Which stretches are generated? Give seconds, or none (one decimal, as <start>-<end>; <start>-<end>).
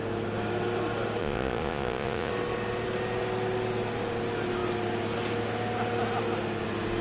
1.2-2.3